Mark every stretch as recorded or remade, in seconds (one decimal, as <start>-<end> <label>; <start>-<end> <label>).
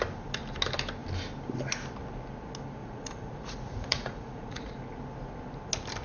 0.0-2.8 recorded; 2.8-4.7 remade; 4.7-6.0 recorded